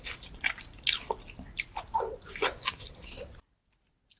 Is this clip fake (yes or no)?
no